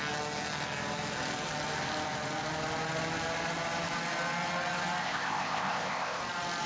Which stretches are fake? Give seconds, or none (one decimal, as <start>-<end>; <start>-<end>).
5.0-6.2

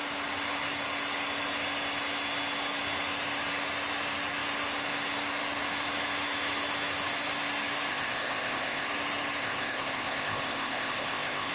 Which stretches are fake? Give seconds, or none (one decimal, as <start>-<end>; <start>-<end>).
7.9-8.9; 9.4-11.5

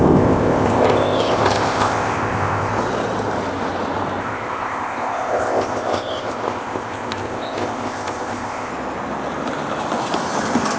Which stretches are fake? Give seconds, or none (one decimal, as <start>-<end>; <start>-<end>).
0.0-2.7; 4.2-8.7

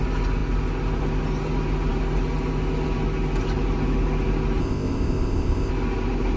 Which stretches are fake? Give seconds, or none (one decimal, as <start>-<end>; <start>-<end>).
4.6-5.7

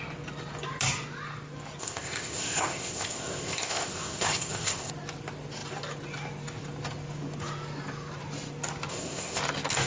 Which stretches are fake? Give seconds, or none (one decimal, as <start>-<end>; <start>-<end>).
1.8-4.9; 8.9-9.4

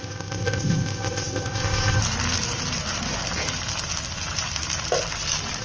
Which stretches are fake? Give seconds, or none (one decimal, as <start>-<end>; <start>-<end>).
0.0-2.0

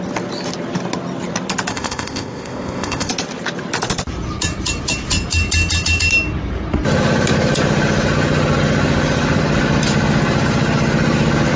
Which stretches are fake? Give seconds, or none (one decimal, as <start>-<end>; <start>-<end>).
1.7-3.1

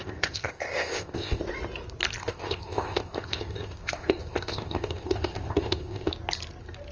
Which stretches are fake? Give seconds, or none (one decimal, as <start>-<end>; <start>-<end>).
0.0-1.4; 2.2-6.1